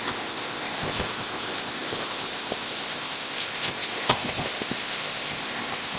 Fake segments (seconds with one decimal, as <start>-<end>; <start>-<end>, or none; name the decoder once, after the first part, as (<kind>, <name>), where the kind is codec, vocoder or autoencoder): 0.0-6.0 (codec, ZipCodec)

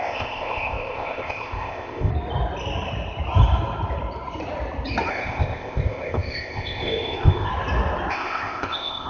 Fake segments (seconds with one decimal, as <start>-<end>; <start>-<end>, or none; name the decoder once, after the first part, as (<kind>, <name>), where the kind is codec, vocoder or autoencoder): 0.0-2.1 (codec, ZipCodec); 5.1-7.5; 8.1-9.1

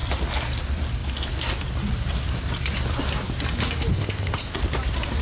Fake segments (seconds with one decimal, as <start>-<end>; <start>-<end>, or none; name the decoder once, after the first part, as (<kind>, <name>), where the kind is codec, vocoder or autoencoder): 3.9-4.6 (codec, ZipCodec)

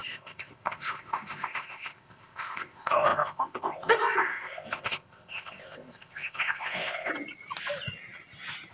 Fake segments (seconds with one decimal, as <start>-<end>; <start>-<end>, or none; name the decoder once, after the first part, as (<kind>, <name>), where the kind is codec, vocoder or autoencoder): 0.0-7.1 (codec, ZipCodec)

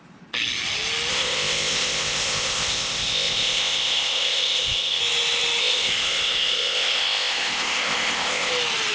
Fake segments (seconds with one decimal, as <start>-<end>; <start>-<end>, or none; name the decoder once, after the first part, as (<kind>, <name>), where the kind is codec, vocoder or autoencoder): 1.1-5.0 (codec, ZipCodec); 5.6-8.5

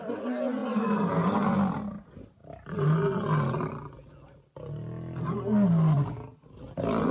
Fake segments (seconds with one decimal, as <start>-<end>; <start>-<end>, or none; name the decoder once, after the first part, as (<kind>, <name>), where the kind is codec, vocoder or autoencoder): none

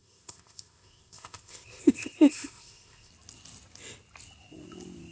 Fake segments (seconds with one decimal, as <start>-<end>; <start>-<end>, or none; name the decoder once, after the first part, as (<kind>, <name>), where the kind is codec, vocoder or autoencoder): 0.0-3.1 (codec, ZipCodec)

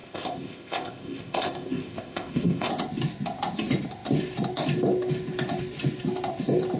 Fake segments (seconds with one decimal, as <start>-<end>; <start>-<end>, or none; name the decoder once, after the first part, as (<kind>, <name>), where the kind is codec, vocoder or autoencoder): 0.0-2.7 (codec, ZipCodec)